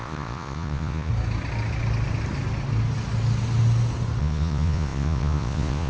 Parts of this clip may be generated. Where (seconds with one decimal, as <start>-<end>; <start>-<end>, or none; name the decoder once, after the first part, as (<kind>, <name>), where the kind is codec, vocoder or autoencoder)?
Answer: 0.0-1.1 (vocoder, Vocos); 4.2-5.9